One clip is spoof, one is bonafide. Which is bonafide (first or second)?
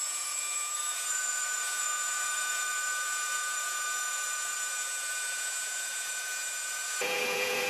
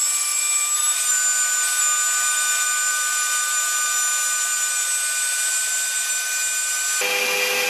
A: second